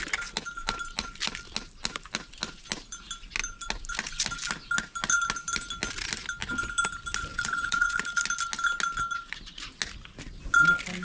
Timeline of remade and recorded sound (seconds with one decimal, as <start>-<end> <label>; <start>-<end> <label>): 0.0-7.3 recorded; 7.3-8.0 remade; 8.0-11.0 recorded